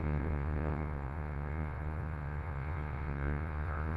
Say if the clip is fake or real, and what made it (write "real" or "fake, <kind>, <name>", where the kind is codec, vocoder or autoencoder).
fake, vocoder, Vocos